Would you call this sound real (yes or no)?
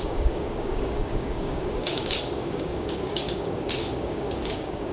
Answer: no